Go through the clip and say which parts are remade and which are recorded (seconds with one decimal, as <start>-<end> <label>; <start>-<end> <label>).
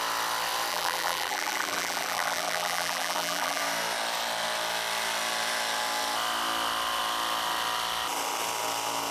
0.0-0.7 recorded; 0.7-3.6 remade; 3.6-9.1 recorded